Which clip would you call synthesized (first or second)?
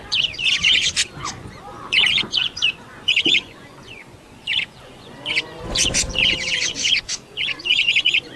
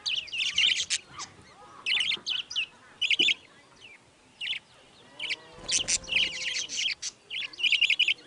first